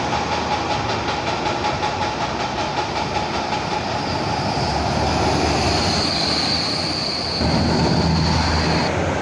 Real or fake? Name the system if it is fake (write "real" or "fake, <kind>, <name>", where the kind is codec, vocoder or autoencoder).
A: real